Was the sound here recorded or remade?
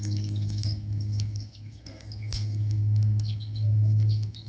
remade